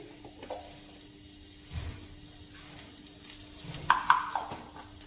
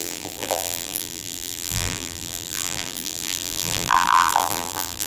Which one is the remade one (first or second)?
second